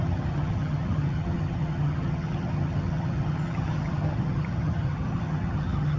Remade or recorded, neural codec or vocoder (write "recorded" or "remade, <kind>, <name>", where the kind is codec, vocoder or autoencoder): remade, vocoder, HiFi-GAN